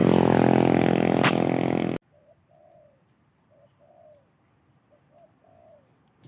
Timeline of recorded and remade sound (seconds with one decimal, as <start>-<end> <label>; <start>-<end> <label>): 0.0-6.3 recorded